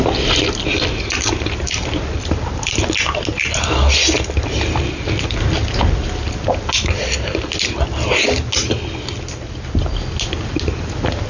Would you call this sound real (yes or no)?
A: yes